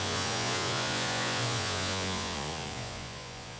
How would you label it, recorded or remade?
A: remade